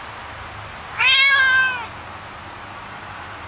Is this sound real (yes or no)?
yes